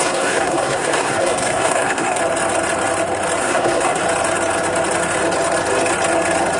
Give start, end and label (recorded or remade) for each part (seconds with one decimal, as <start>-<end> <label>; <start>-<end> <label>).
0.0-2.2 remade; 2.2-3.4 recorded; 3.4-4.0 remade; 4.0-6.6 recorded